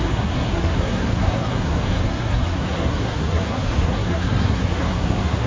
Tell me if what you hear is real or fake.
fake